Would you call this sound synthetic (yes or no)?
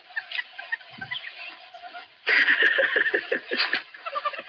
no